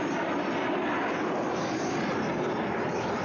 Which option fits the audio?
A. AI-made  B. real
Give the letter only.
B